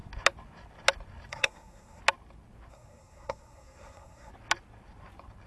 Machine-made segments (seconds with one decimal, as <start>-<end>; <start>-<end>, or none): 1.3-2.0; 2.7-4.3